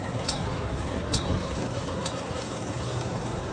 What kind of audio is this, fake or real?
fake